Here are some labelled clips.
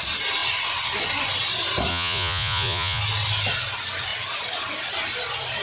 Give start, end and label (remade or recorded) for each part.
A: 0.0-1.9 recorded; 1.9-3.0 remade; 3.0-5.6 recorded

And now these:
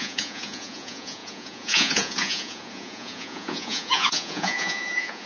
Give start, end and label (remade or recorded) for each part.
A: 0.0-5.3 remade